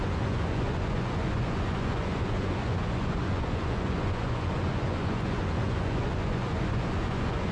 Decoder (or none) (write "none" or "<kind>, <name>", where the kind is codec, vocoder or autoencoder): vocoder, Vocos